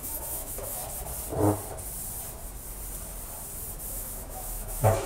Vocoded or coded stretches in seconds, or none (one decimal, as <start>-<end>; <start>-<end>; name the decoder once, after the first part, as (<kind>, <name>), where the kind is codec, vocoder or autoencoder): 0.0-0.8 (autoencoder, DAC-VAE); 3.9-5.1